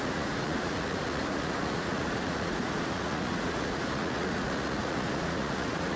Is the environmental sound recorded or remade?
remade